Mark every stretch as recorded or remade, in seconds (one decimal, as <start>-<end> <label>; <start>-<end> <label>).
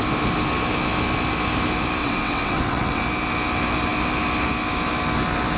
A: 0.0-2.0 recorded; 2.0-3.0 remade; 3.0-5.6 recorded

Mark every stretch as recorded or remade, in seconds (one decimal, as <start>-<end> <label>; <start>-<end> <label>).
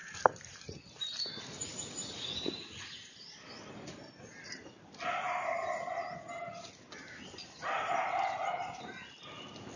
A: 0.0-9.8 recorded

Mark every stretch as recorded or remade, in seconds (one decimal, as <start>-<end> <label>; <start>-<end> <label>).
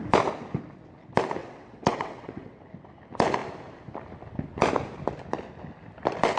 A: 0.0-1.4 recorded; 1.4-2.6 remade; 2.6-6.4 recorded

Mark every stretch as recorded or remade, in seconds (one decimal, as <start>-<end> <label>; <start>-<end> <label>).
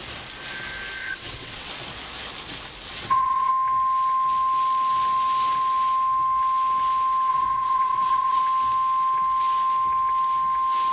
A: 0.0-1.0 recorded; 1.0-1.7 remade; 1.7-2.9 recorded; 2.9-3.5 remade; 3.5-7.3 recorded; 7.3-8.4 remade; 8.4-10.9 recorded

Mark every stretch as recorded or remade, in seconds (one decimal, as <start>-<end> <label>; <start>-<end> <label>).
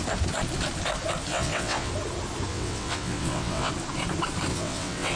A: 0.0-1.3 recorded; 1.3-1.9 remade; 1.9-2.5 recorded; 2.5-3.7 remade; 3.7-4.5 recorded; 4.5-5.2 remade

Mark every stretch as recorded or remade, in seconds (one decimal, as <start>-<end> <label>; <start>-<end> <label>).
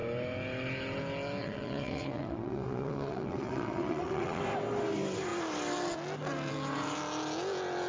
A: 0.0-1.4 recorded; 1.4-4.4 remade; 4.4-7.9 recorded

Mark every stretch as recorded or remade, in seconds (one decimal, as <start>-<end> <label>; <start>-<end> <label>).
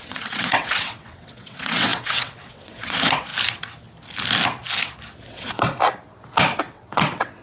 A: 0.0-3.3 remade; 3.3-5.2 recorded; 5.2-5.8 remade; 5.8-6.6 recorded; 6.6-7.4 remade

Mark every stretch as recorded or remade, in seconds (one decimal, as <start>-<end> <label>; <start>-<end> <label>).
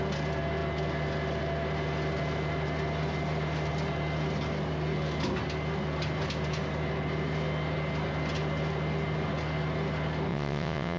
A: 0.0-10.3 recorded; 10.3-11.0 remade